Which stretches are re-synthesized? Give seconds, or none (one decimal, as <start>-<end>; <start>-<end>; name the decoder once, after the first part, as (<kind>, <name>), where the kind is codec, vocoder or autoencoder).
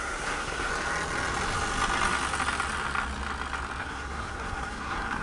0.0-0.7 (codec, SNAC); 3.8-5.2